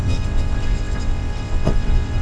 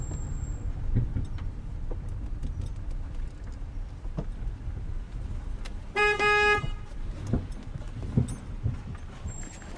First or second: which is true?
second